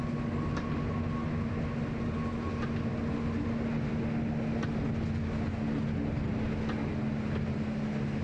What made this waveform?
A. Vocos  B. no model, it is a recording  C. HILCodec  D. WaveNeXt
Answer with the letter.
B